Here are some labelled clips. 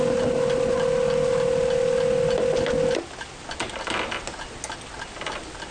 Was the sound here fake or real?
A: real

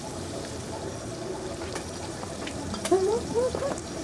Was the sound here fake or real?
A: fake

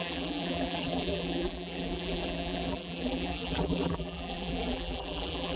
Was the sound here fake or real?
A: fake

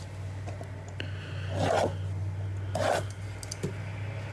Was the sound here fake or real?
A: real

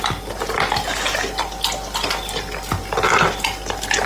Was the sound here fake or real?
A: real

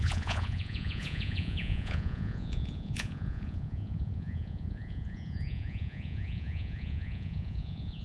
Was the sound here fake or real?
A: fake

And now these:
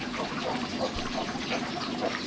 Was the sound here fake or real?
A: real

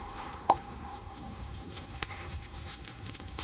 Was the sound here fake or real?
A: fake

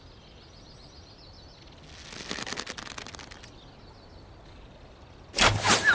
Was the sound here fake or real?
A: real